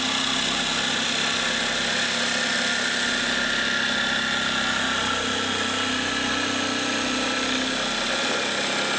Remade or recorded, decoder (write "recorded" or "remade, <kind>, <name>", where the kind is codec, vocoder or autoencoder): recorded